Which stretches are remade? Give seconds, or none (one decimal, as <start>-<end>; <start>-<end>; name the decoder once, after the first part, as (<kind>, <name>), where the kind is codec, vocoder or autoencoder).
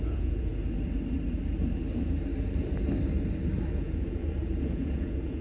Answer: 0.0-0.5 (vocoder, Vocos); 3.7-5.4